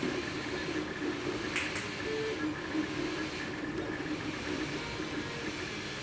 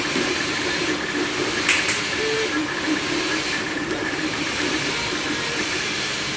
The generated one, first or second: second